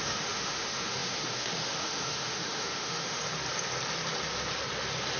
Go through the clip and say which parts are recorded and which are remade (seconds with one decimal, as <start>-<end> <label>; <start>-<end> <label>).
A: 0.0-3.2 remade; 3.2-5.2 recorded